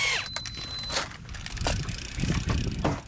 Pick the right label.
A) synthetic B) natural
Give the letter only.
B